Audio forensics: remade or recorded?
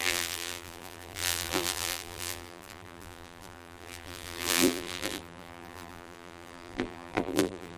remade